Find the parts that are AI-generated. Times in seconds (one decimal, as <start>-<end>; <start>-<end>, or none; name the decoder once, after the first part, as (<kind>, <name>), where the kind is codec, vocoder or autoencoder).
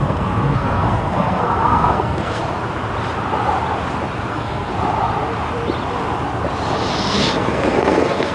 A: 0.0-2.4 (codec, SNAC); 4.3-4.7; 6.9-8.3